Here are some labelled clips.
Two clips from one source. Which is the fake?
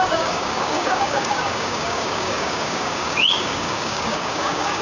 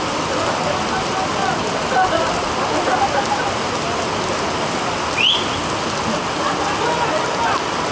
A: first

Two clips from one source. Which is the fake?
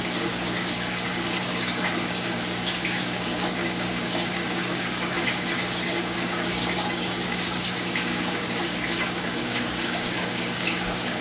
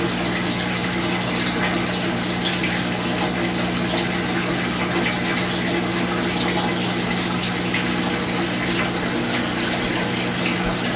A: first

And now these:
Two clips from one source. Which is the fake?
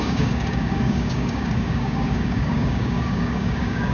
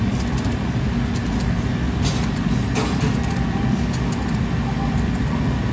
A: first